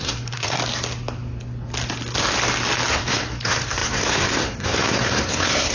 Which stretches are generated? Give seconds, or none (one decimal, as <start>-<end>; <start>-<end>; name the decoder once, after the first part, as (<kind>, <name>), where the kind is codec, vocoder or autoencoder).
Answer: 0.0-0.6 (codec, SNAC); 2.9-5.7